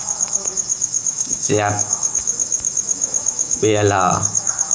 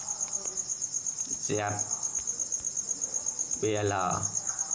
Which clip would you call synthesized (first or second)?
first